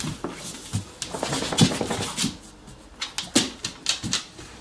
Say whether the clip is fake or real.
real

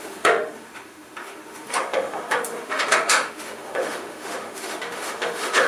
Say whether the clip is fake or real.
fake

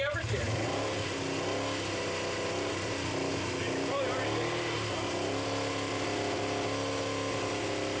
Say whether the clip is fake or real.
real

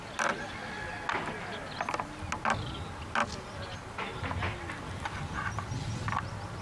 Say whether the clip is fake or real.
real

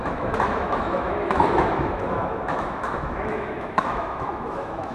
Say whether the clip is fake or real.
fake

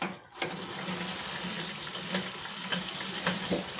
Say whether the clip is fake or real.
real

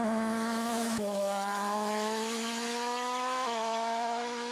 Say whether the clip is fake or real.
fake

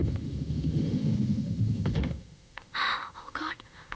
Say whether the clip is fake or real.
fake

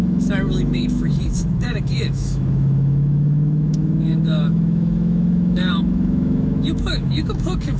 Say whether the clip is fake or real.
fake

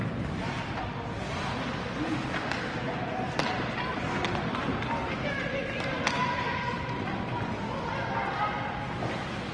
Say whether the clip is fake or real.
real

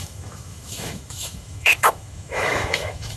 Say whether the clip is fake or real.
fake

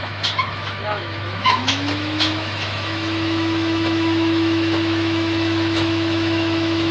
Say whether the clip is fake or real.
fake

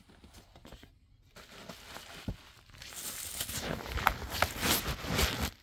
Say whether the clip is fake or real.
real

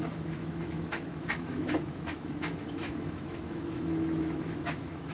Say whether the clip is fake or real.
fake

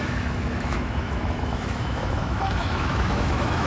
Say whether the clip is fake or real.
fake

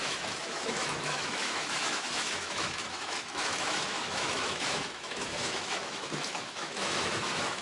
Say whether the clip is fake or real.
fake